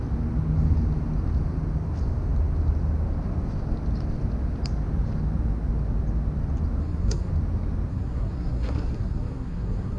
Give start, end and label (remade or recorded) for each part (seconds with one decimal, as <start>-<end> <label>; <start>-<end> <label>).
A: 0.0-6.8 recorded; 6.8-7.3 remade; 7.3-7.9 recorded; 7.9-10.0 remade